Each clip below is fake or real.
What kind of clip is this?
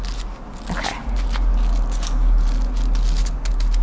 real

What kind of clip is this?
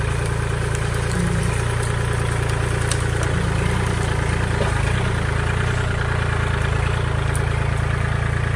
real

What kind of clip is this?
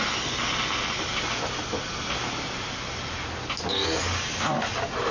real